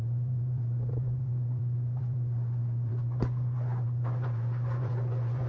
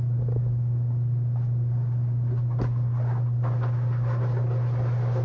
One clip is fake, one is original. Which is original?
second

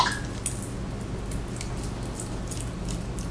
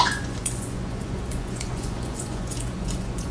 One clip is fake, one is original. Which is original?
first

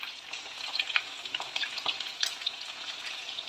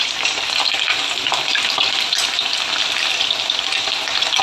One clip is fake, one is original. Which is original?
second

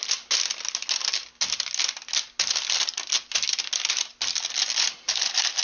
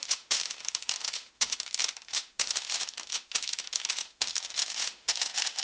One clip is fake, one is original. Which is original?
first